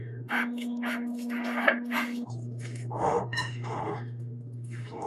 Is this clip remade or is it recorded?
remade